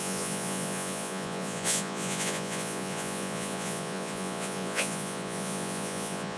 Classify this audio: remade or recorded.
remade